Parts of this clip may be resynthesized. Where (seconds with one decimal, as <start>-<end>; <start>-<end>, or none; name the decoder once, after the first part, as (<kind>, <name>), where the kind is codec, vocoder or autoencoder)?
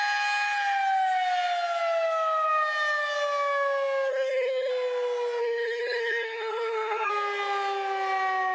4.1-4.7 (codec, SNAC); 5.4-7.1